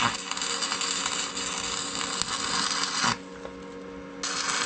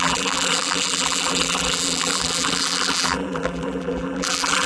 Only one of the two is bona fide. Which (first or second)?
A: first